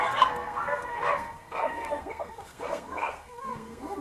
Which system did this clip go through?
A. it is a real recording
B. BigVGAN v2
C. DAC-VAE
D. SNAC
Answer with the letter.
D